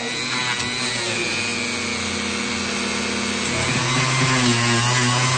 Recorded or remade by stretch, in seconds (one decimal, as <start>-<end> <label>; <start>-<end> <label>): 0.0-5.4 recorded